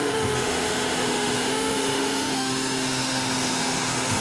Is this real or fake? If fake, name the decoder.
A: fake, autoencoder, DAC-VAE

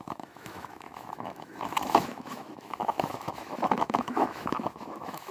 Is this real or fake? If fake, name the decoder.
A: fake, autoencoder, DAC-VAE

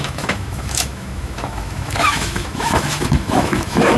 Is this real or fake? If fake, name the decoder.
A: fake, autoencoder, DAC-VAE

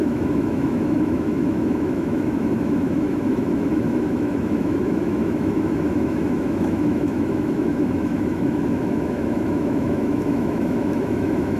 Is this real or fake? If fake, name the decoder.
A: fake, autoencoder, DAC-VAE